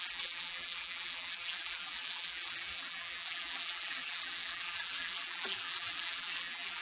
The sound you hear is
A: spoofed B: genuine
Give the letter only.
A